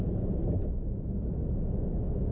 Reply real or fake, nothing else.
real